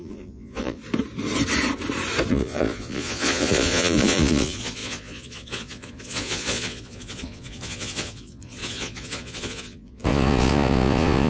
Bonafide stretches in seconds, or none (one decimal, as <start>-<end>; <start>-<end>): 0.8-2.3